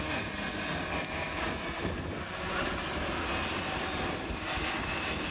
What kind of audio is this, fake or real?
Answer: real